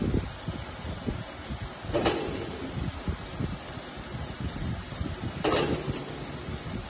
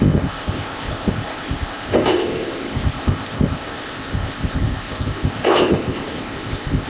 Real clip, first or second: first